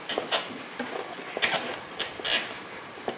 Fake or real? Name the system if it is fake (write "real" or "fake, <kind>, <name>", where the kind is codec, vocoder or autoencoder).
real